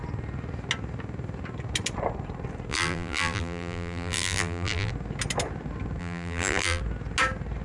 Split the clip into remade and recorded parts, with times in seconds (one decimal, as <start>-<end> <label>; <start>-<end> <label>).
0.0-2.7 recorded; 2.7-4.9 remade; 4.9-6.0 recorded; 6.0-6.8 remade; 6.8-7.6 recorded